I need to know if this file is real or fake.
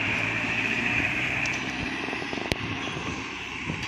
fake